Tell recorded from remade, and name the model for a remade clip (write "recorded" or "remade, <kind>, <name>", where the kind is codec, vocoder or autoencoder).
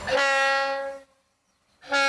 recorded